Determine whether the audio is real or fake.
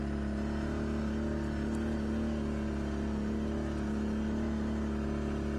real